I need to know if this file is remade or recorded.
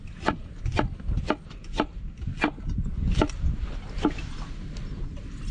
recorded